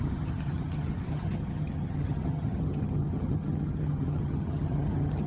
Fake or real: fake